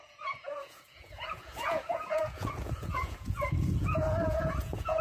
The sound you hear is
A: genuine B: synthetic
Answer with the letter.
B